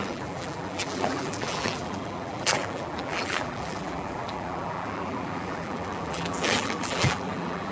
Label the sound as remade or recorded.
remade